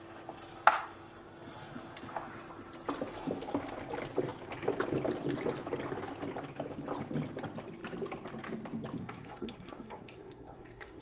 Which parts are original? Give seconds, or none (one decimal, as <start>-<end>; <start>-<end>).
0.0-9.0